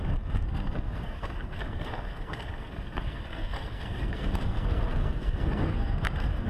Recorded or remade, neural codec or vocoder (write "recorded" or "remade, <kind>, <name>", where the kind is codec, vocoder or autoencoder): remade, codec, SNAC